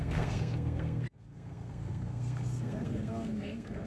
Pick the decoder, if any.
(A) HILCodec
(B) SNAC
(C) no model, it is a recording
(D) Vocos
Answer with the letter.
B